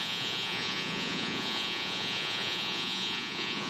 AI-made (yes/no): yes